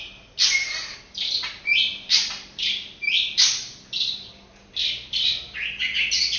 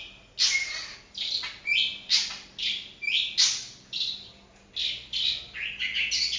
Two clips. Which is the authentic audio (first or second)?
second